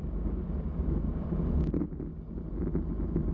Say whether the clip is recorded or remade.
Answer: recorded